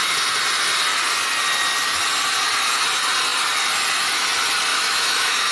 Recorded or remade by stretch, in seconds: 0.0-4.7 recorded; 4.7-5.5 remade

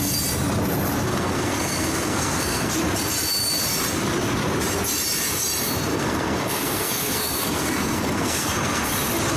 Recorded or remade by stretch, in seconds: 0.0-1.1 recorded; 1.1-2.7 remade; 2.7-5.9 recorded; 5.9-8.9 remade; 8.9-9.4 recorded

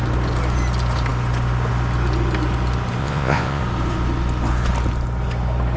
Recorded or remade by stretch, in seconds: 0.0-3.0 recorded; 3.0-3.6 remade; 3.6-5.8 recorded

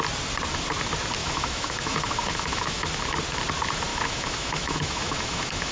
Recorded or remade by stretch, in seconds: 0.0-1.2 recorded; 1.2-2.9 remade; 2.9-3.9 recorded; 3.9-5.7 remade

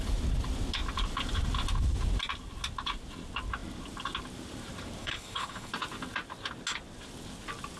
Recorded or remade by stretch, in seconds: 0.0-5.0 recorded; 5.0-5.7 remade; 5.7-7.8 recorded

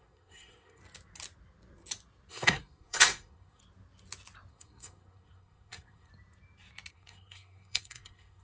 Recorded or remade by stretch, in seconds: 0.0-0.8 remade; 0.8-2.3 recorded; 2.3-3.6 remade; 3.6-4.5 recorded; 4.5-6.1 remade; 6.1-6.9 recorded; 6.9-8.4 remade